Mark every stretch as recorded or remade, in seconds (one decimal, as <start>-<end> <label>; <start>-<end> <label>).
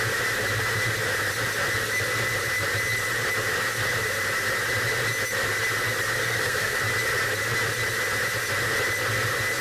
0.0-6.2 recorded; 6.2-6.8 remade; 6.8-9.6 recorded